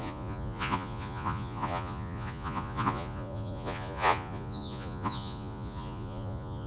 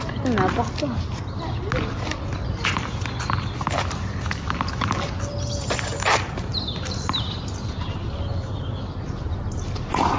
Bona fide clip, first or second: second